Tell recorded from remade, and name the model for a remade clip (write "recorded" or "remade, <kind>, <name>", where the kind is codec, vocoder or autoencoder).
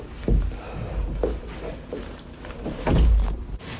remade, vocoder, BigVGAN v2